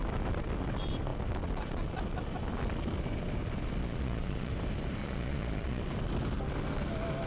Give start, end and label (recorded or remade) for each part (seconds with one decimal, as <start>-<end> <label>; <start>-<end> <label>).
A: 0.0-3.8 recorded; 3.8-4.5 remade; 4.5-5.0 recorded; 5.0-5.8 remade; 5.8-7.3 recorded